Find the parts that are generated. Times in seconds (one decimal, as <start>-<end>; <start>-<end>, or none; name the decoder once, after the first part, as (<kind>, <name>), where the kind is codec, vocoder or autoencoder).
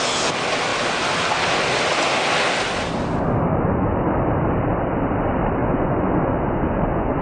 3.5-4.0 (vocoder, Vocos); 5.6-7.2